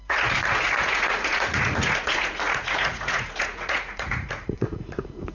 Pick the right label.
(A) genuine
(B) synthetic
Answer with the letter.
B